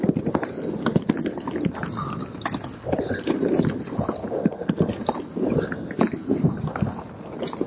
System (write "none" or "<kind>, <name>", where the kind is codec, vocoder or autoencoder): none